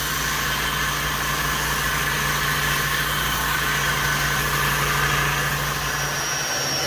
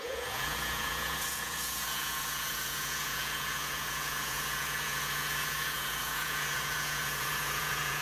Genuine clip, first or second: first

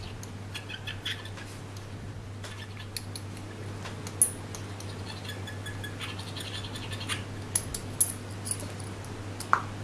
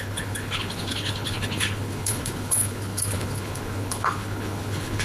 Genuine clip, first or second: first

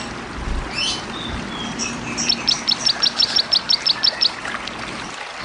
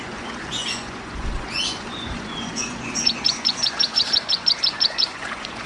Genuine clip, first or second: first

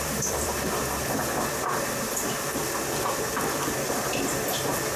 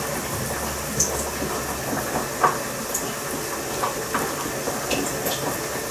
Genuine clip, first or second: second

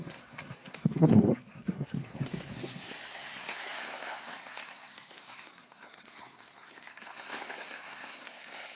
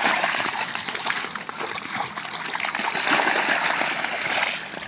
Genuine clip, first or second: second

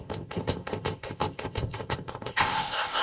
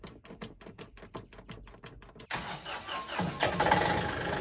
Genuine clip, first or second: second